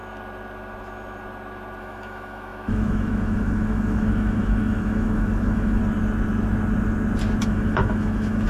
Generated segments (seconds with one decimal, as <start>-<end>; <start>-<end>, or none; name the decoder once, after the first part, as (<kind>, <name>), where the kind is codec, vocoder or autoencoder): 1.8-5.8 (autoencoder, DAC-VAE); 7.4-8.5